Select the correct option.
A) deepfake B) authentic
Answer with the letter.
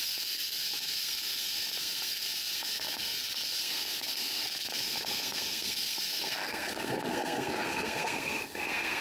A